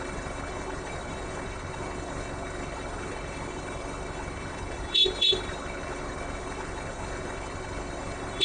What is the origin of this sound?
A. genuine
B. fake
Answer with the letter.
B